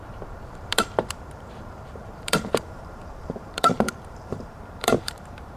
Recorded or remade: remade